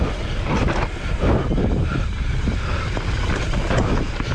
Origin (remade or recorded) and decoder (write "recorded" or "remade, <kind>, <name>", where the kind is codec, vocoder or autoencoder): recorded